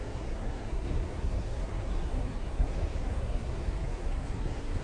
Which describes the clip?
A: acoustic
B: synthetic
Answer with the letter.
B